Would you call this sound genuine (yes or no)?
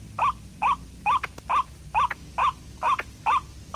yes